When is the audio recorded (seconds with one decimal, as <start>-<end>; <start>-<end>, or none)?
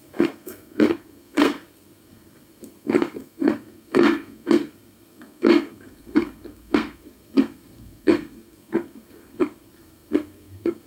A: none